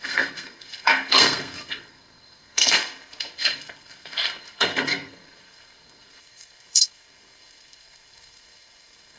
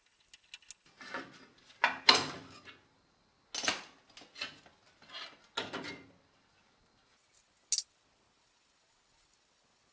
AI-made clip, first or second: first